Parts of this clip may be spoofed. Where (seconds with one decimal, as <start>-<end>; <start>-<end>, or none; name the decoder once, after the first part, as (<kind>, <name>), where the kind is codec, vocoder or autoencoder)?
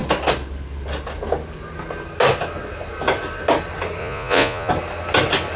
4.0-4.7 (vocoder, Vocos)